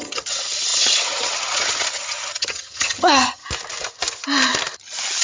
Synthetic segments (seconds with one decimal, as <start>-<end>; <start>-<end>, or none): 0.0-3.4